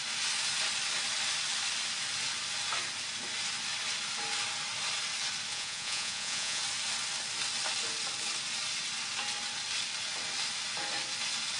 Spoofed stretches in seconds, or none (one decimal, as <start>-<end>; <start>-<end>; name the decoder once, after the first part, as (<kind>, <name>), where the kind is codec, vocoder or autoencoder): 5.5-6.6 (vocoder, Vocos)